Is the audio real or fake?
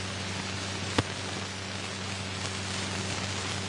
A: real